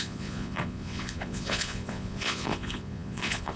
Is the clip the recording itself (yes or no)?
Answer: no